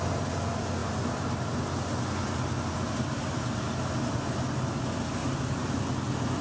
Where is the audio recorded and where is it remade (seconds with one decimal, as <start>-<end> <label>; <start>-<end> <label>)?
0.0-5.2 recorded; 5.2-5.8 remade; 5.8-6.4 recorded